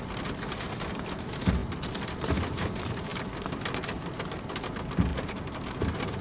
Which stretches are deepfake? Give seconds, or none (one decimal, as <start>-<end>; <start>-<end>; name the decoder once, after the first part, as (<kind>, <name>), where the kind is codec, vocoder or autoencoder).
none